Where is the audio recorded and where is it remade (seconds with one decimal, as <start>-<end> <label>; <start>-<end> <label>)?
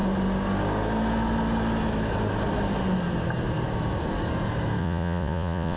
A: 0.0-4.8 recorded; 4.8-5.8 remade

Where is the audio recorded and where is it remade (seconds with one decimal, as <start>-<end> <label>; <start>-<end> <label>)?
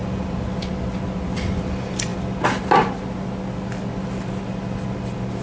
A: 0.0-5.4 recorded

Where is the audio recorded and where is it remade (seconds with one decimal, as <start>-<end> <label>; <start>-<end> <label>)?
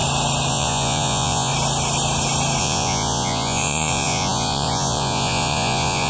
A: 0.0-0.5 recorded; 0.5-1.5 remade; 1.5-2.6 recorded; 2.6-6.1 remade